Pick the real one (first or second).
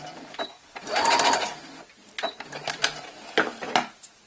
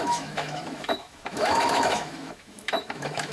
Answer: first